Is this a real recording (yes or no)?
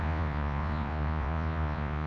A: no